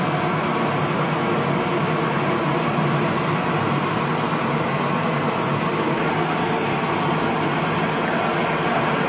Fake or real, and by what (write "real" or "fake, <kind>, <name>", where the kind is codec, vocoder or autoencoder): real